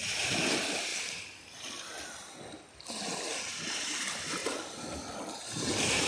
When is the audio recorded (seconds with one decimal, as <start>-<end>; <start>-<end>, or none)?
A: 0.9-3.7; 4.4-5.4